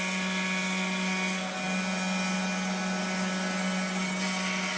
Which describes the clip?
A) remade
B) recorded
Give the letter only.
B